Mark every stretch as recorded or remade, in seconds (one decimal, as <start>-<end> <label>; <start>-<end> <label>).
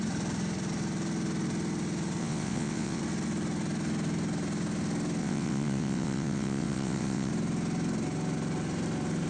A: 0.0-2.2 recorded; 2.2-3.0 remade; 3.0-5.2 recorded; 5.2-7.3 remade; 7.3-9.3 recorded